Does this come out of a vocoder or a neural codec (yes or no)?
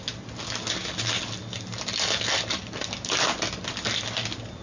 no